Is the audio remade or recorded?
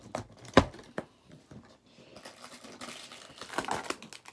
recorded